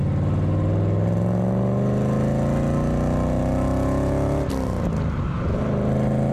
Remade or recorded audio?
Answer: recorded